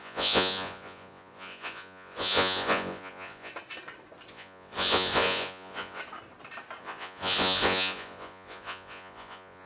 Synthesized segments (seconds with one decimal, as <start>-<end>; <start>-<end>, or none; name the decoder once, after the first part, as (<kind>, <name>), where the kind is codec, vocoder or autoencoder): 0.0-3.5 (vocoder, Vocos); 4.3-6.0; 6.8-9.7

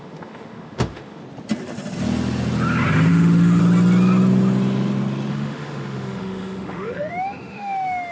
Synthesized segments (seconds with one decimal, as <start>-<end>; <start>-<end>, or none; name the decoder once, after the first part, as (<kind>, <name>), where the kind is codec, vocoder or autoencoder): 0.0-1.2 (autoencoder, DAC-VAE); 3.1-3.6; 5.3-8.1

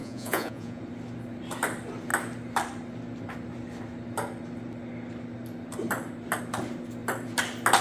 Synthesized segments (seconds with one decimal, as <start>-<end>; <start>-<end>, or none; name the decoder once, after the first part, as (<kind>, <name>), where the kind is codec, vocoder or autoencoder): 0.0-0.8 (vocoder, Vocos)

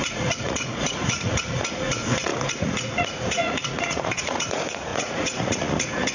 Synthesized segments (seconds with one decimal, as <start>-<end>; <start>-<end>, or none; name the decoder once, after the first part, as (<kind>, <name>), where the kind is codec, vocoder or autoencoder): 0.0-6.1 (vocoder, Vocos)

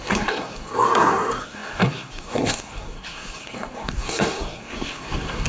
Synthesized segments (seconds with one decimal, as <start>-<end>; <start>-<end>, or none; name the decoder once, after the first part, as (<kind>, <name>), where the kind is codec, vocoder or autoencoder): 0.0-5.5 (codec, SNAC)